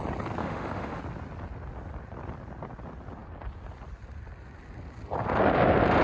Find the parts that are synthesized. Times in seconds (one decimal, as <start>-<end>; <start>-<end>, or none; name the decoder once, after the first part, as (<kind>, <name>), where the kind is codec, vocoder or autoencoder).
0.4-1.0 (autoencoder, DAC-VAE)